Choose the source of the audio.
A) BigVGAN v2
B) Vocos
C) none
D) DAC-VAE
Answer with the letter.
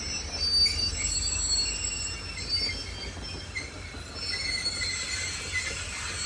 C